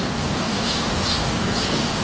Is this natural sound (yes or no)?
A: no